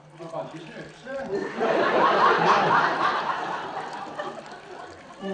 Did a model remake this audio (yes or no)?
no